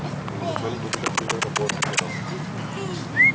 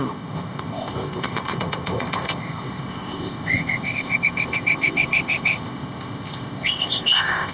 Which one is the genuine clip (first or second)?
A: first